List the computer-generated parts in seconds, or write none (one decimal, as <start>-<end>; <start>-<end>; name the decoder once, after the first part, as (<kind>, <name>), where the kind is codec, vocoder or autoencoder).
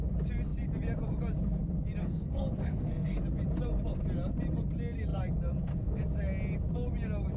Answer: 2.0-3.2 (codec, SNAC)